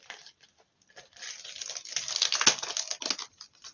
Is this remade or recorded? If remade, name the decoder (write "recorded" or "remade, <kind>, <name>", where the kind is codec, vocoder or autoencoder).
recorded